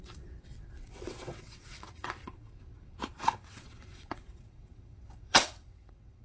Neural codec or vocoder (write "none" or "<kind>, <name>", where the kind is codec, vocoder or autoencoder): vocoder, WaveNeXt